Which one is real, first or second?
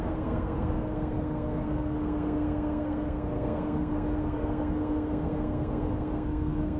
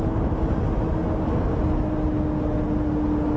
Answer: second